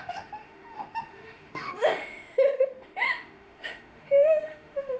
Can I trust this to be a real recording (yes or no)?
no